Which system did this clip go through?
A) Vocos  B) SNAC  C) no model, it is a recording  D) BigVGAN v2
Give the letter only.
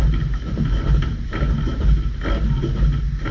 C